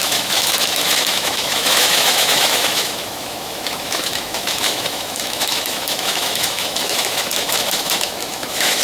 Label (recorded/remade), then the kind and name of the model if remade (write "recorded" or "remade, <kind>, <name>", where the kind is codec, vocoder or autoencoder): remade, autoencoder, DAC-VAE